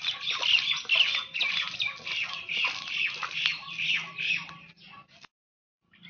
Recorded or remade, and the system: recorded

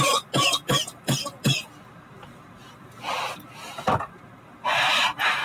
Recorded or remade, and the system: recorded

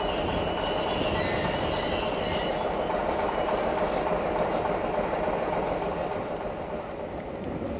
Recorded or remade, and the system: recorded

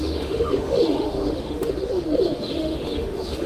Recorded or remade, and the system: remade, autoencoder, DAC-VAE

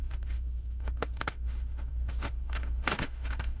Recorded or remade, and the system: remade, autoencoder, DAC-VAE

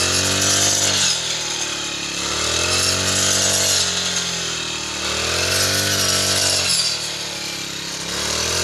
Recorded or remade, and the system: recorded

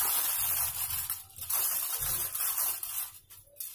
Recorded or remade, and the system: recorded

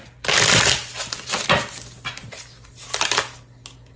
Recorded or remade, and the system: recorded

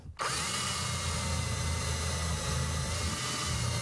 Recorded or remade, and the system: recorded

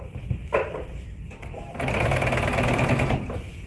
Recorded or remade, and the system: recorded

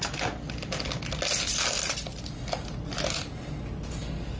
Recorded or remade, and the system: recorded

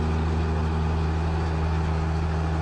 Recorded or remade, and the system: recorded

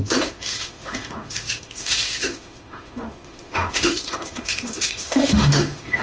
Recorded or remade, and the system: remade, autoencoder, DAC-VAE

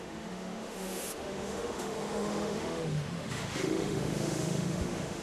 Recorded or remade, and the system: remade, autoencoder, DAC-VAE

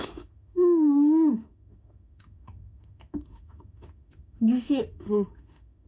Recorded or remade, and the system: remade, autoencoder, DAC-VAE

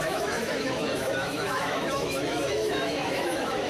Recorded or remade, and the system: remade, autoencoder, DAC-VAE